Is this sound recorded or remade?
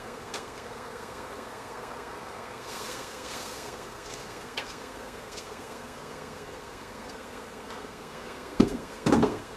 remade